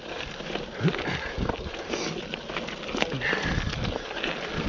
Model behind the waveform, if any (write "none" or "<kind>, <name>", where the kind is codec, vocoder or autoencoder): none